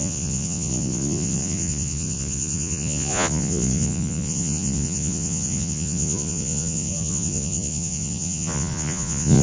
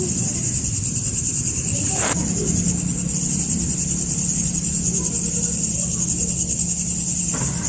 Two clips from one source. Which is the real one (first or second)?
second